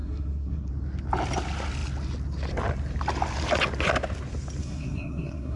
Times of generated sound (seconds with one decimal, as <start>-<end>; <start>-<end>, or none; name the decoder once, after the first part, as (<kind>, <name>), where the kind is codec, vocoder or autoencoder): 0.0-0.7 (codec, SNAC); 4.6-5.6